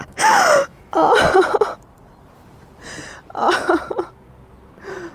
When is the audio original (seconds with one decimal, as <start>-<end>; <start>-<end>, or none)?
0.8-5.1